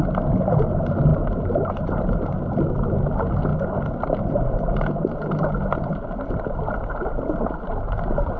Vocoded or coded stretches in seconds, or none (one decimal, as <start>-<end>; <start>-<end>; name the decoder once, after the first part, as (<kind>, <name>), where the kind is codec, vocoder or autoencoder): none